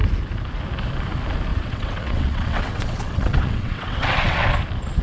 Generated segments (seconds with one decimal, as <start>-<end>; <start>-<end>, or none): 1.5-4.5